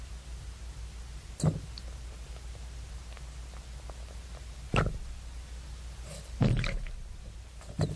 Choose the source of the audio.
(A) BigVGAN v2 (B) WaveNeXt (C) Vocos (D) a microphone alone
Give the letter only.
D